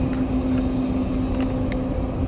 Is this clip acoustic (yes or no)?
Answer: yes